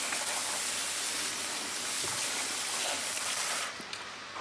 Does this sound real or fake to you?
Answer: real